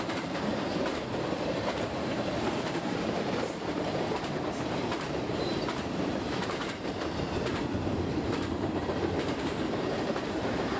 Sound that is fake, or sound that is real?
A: fake